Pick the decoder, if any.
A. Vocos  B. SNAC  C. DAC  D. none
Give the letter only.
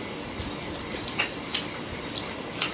D